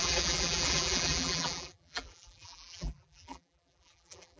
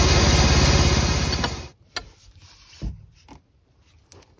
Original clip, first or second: second